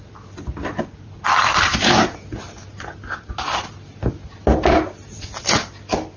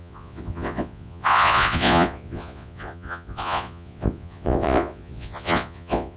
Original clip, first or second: first